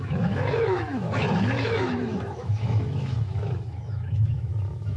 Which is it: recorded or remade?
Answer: remade